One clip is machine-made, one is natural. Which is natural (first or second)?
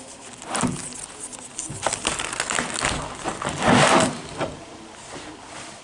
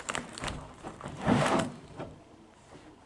first